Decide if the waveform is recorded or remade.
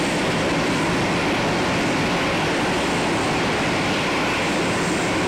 recorded